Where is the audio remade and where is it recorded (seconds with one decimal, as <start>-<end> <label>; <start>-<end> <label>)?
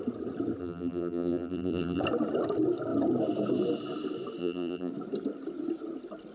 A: 0.0-0.6 recorded; 0.6-2.0 remade; 2.0-4.4 recorded; 4.4-4.9 remade; 4.9-6.3 recorded